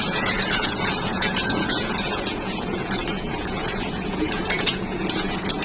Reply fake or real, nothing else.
fake